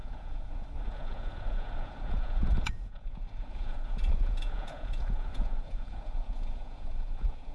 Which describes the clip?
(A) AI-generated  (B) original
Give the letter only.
A